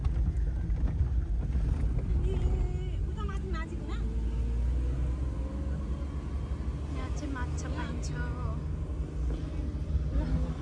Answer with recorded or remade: recorded